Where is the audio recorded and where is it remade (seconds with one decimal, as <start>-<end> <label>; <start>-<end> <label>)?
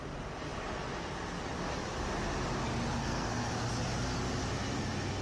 0.0-3.0 recorded; 3.0-3.5 remade; 3.5-5.2 recorded